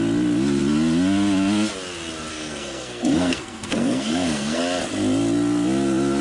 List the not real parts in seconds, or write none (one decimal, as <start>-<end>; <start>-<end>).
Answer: 2.3-4.6